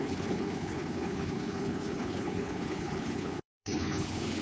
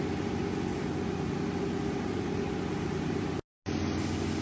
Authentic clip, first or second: second